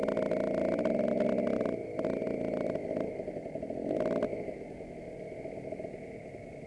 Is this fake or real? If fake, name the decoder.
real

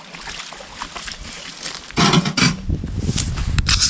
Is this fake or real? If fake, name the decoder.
real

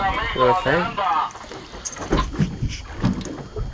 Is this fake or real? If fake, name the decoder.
real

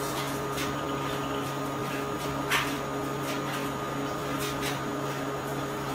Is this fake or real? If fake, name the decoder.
real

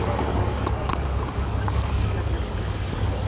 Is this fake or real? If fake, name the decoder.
fake, codec, DAC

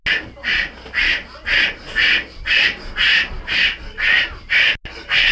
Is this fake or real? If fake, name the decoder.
real